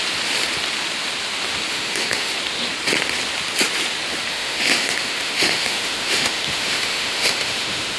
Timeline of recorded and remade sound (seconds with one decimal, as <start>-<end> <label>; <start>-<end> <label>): 0.0-1.7 recorded; 1.7-2.3 remade; 2.3-4.3 recorded; 4.3-8.0 remade